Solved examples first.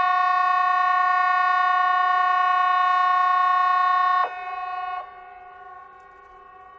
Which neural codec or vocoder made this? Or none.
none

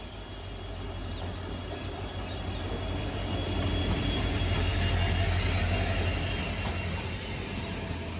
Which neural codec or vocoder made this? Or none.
none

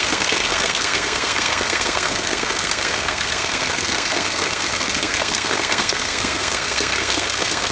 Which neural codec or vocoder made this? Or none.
codec, SNAC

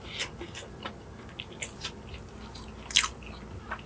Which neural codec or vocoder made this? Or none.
none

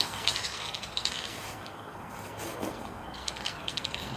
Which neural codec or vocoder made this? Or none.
codec, SNAC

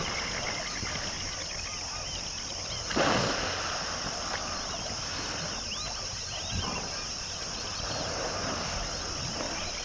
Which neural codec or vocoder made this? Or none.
none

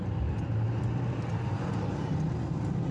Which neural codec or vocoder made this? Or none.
none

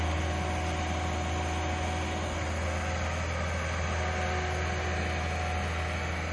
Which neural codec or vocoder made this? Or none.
none